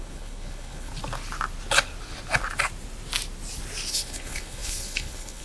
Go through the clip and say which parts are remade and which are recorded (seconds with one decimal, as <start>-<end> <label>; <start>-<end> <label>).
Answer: 0.0-0.9 remade; 0.9-3.9 recorded; 3.9-5.4 remade